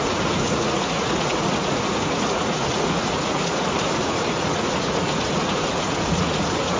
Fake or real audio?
fake